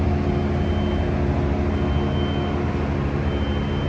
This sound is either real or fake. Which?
real